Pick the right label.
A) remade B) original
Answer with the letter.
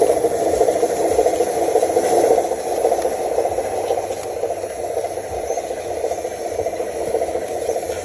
B